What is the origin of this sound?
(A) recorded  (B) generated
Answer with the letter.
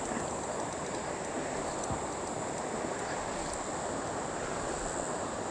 A